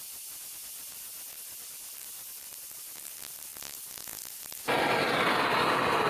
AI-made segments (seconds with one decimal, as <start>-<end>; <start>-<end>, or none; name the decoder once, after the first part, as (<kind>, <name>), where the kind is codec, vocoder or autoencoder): none